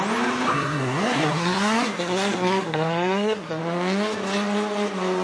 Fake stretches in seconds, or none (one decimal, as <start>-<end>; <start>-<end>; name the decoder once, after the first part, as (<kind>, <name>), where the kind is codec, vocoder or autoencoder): 0.5-3.6 (codec, SNAC)